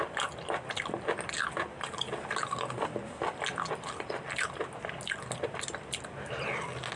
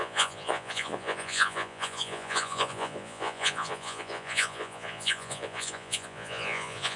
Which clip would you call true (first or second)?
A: first